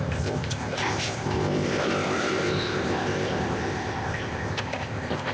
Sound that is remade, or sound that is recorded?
remade